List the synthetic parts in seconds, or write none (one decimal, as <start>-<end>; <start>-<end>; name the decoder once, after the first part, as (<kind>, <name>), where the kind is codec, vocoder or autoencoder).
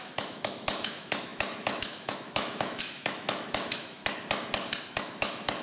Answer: 0.0-4.0 (autoencoder, DAC-VAE); 4.9-5.6